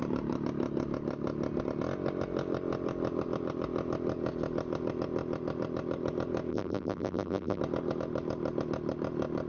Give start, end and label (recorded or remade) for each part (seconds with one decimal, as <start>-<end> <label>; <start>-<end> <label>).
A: 0.0-6.5 recorded; 6.5-7.6 remade; 7.6-9.5 recorded